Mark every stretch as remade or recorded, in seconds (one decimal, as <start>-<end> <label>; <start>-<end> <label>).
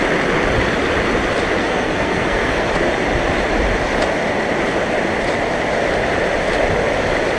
0.0-1.6 recorded; 1.6-2.7 remade; 2.7-7.4 recorded